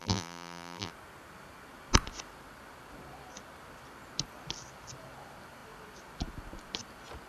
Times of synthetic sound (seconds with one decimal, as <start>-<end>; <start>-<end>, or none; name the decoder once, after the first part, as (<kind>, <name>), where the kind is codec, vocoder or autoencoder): 0.0-0.9 (vocoder, BigVGAN v2)